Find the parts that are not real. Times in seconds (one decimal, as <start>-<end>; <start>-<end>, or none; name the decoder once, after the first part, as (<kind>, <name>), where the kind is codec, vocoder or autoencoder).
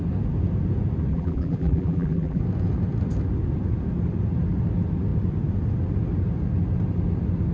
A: 1.1-2.4 (vocoder, BigVGAN v2)